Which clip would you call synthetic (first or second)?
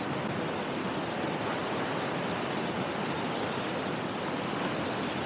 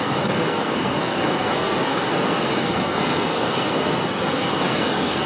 second